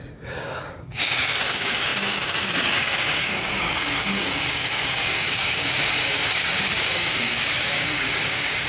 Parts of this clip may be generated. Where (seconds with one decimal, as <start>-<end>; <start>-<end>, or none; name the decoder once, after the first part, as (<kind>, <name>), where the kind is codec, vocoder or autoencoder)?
0.0-8.7 (codec, DAC)